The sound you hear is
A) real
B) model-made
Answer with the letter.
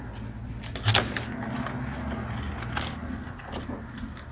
A